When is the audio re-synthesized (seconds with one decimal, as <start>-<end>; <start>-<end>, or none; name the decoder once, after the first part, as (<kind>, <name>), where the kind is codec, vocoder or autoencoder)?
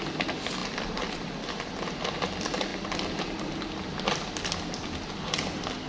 none